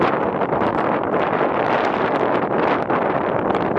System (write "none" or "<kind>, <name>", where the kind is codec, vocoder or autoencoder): none